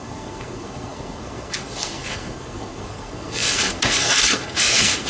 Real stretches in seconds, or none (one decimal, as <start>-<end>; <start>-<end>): none